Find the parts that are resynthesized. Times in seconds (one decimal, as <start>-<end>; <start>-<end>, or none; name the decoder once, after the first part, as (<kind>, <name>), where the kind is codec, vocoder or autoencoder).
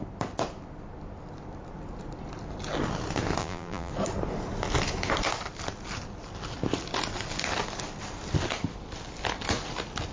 3.4-3.9 (vocoder, BigVGAN v2)